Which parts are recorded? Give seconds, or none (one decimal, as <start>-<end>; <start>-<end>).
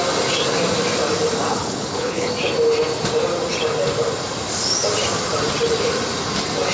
0.0-1.5; 2.3-6.7